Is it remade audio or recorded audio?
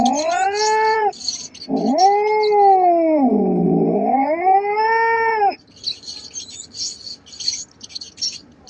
recorded